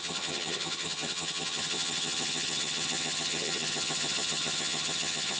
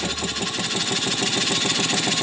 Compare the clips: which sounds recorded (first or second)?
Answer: second